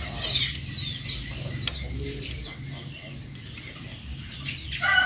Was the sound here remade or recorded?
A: recorded